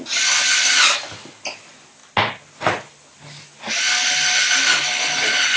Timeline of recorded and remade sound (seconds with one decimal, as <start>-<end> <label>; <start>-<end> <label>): 0.0-5.6 recorded